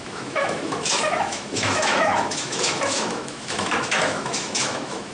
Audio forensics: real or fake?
fake